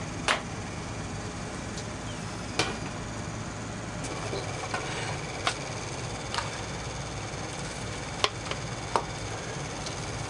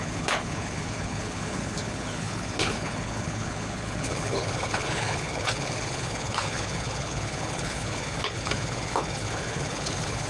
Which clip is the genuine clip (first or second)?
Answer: first